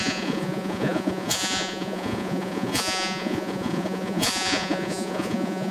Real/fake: fake